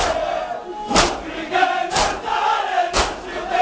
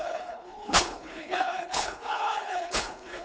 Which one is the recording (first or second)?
first